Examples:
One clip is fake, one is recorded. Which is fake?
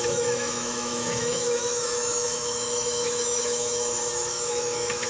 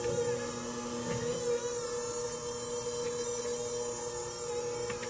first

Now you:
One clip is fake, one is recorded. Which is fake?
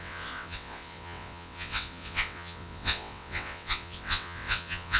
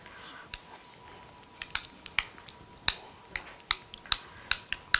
first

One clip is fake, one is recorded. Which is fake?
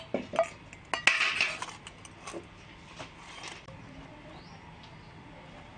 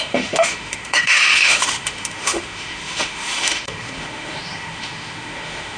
second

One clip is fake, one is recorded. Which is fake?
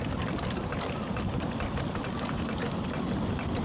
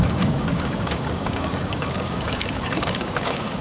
second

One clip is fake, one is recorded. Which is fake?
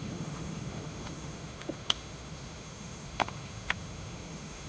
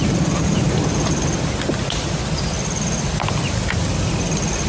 first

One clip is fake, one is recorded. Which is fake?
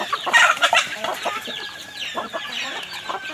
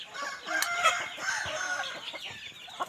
first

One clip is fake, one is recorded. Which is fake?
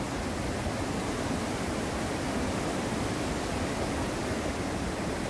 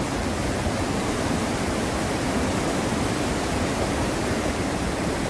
second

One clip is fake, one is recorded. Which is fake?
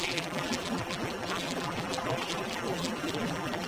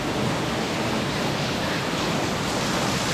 first